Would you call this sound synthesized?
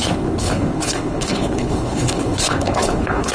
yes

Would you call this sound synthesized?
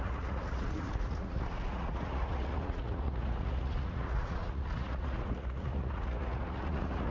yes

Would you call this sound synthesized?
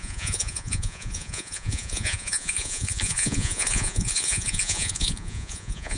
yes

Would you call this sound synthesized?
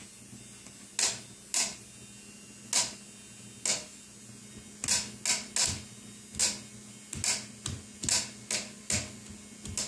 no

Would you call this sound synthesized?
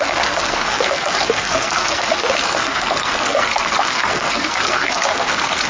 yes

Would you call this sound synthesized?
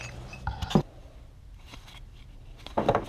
no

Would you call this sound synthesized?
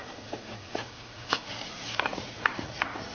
yes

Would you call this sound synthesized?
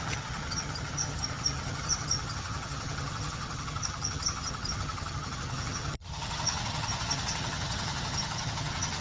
yes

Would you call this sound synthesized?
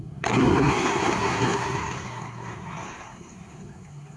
yes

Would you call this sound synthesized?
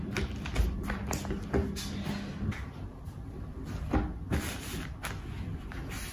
no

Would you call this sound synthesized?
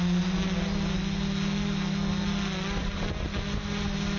no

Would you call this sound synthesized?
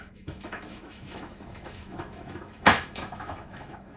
yes